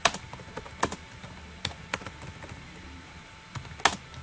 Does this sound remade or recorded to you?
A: recorded